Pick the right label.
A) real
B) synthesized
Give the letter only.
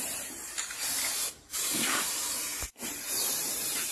B